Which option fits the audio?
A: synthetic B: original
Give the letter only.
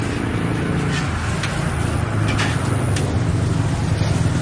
B